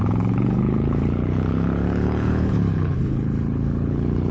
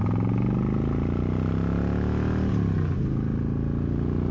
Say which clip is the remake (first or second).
first